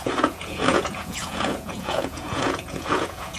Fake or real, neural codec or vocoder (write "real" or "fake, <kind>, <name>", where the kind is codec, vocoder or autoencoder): fake, vocoder, Vocos